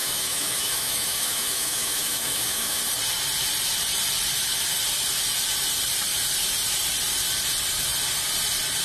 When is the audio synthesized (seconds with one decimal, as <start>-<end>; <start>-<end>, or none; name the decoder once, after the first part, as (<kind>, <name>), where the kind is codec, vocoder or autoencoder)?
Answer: 0.0-2.8 (autoencoder, DAC-VAE)

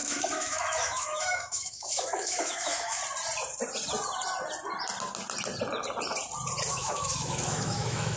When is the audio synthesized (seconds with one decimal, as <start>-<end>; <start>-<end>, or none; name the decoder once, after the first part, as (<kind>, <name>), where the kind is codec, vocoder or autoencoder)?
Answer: 0.0-3.0 (autoencoder, DAC-VAE); 6.7-8.2

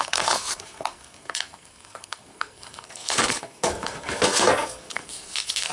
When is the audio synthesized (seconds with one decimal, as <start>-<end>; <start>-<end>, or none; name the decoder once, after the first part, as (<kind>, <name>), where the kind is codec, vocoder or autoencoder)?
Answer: 0.0-5.7 (codec, SNAC)

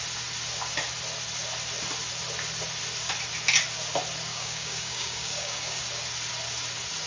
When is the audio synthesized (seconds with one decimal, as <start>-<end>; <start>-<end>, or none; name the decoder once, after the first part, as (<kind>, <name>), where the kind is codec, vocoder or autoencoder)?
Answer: 4.3-5.8 (codec, DAC)

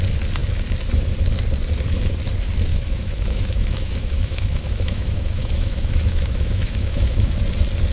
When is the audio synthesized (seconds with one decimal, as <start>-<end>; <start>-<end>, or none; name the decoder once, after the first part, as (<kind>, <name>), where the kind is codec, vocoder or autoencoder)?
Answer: 2.7-7.4 (autoencoder, DAC-VAE)

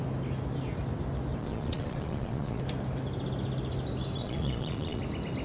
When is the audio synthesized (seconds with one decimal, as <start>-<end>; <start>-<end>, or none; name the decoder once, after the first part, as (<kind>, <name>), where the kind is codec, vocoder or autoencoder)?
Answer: 1.4-2.6 (vocoder, Vocos); 4.2-5.0

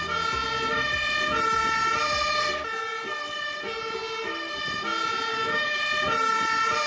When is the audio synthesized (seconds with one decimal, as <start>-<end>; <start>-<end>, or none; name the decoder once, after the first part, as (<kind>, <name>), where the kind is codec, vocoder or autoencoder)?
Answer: 5.3-5.8 (codec, DAC)

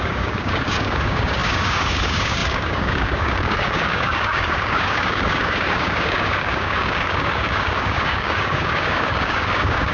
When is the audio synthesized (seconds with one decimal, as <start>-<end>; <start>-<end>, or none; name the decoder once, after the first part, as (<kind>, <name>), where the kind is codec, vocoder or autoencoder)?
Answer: 0.0-9.9 (codec, DAC)